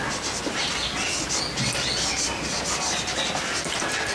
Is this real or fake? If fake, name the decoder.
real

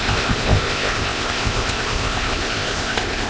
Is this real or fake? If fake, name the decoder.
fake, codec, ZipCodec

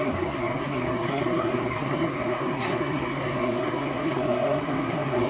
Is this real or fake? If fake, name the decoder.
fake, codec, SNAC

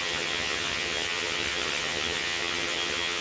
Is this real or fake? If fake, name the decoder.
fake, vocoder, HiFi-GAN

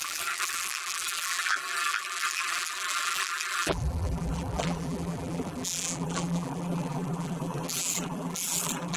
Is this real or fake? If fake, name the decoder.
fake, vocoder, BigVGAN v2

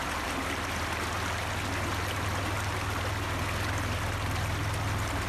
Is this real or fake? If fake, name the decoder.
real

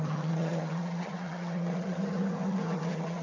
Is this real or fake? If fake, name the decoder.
fake, vocoder, HiFi-GAN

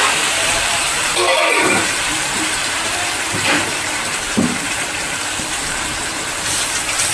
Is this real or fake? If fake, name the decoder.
fake, vocoder, BigVGAN v2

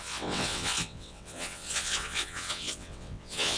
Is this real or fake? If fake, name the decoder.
fake, vocoder, WaveNeXt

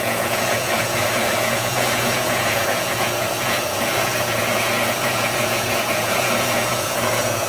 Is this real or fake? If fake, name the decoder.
fake, vocoder, Vocos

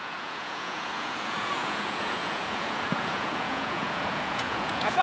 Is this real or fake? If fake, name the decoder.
fake, vocoder, Vocos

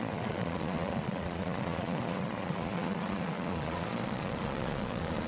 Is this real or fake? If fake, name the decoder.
fake, vocoder, Vocos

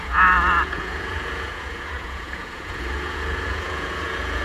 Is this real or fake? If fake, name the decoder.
fake, vocoder, Vocos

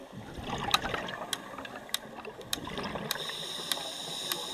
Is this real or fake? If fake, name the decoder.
real